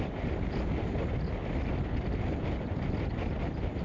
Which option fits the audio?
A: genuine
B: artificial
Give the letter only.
A